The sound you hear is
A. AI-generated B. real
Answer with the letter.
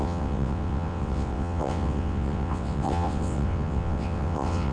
A